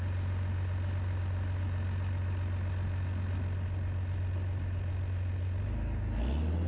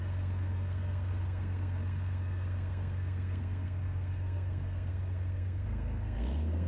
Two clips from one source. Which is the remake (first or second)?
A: second